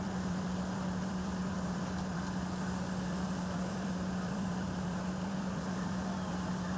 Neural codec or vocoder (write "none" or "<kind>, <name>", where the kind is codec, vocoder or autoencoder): vocoder, BigVGAN v2